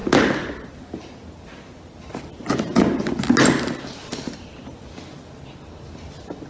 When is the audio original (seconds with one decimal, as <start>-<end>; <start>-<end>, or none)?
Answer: 0.0-6.5